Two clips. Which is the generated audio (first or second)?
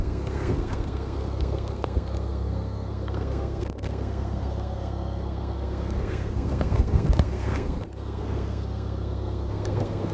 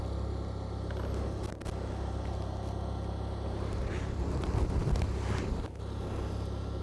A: first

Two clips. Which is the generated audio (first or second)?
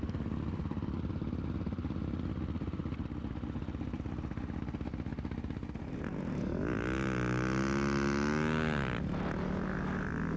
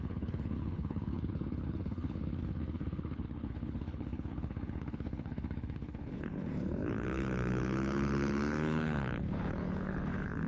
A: second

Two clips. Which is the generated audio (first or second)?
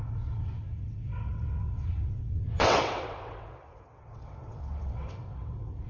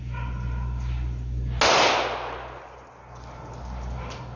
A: first